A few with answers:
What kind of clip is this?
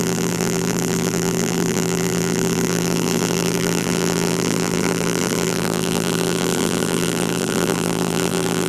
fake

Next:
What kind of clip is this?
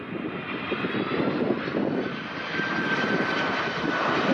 real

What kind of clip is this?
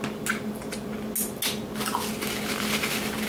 real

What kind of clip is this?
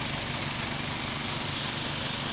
real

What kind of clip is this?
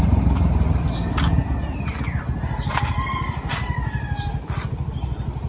real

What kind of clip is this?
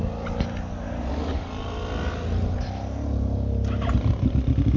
real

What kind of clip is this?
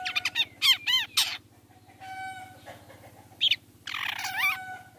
real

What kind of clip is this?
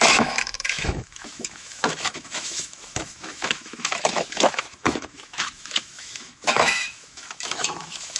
fake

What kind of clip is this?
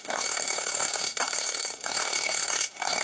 fake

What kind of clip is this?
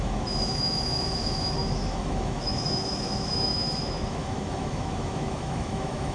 fake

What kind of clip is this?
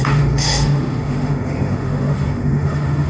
fake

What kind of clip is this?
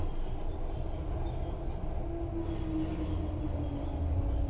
real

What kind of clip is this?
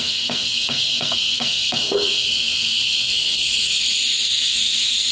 fake